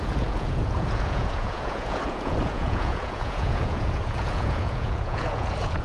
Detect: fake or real fake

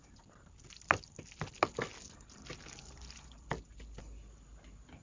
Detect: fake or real real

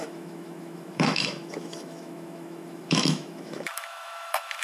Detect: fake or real fake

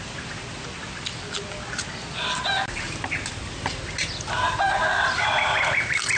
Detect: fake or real real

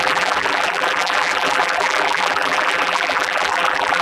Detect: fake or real fake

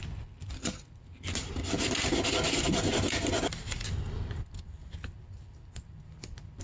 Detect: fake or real real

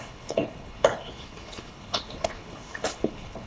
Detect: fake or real fake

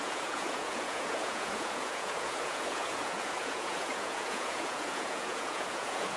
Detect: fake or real fake